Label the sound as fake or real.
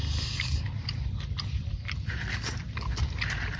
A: real